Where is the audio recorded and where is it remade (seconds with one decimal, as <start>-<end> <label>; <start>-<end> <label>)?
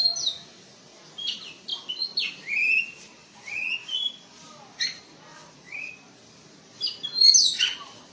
0.0-3.2 recorded; 3.2-4.4 remade; 4.4-5.3 recorded; 5.3-5.9 remade; 5.9-8.1 recorded